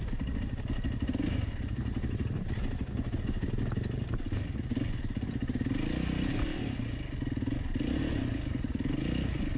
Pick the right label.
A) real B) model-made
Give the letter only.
A